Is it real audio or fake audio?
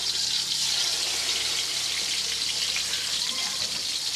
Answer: fake